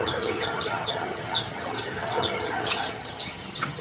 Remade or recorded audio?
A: remade